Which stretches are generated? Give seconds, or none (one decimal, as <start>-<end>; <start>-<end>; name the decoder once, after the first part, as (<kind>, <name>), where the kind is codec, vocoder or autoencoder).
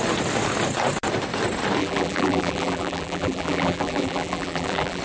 1.8-5.0 (vocoder, BigVGAN v2)